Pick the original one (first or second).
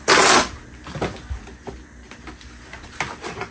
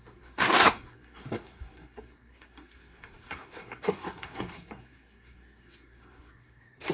first